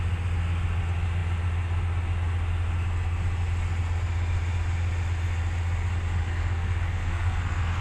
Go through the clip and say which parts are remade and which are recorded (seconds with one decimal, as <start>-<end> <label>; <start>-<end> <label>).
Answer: 0.0-6.2 recorded; 6.2-7.8 remade